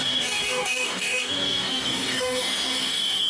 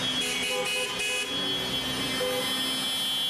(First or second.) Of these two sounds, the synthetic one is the first